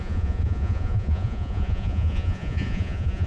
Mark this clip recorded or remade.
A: remade